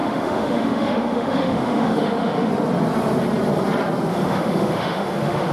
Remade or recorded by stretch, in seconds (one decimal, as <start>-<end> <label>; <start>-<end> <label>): 0.0-2.5 remade; 2.5-4.1 recorded; 4.1-5.5 remade